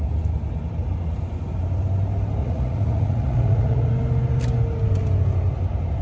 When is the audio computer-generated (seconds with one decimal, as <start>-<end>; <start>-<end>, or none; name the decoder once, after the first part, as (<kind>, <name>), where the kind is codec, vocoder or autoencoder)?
2.4-3.9 (vocoder, Vocos)